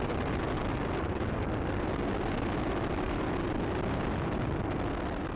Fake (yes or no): no